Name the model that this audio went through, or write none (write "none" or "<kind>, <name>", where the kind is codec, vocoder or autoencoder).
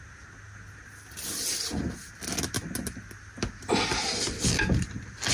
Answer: none